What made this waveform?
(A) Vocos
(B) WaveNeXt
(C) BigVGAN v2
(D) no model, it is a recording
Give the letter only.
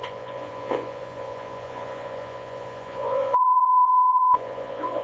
A